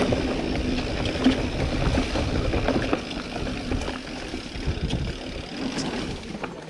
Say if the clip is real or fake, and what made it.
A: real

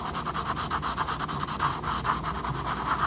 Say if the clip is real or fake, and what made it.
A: real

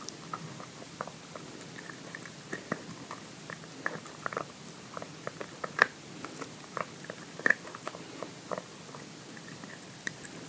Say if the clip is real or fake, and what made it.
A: fake, vocoder, BigVGAN v2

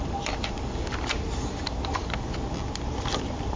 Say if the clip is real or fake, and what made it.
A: real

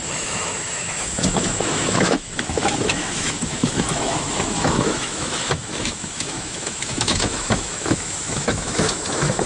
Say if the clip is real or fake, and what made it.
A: fake, autoencoder, DAC-VAE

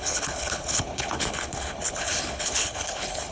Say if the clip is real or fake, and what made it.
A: fake, codec, HILCodec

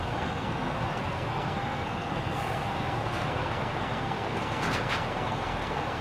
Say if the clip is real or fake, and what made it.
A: fake, codec, SNAC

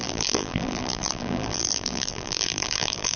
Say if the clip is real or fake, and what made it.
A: fake, vocoder, BigVGAN v2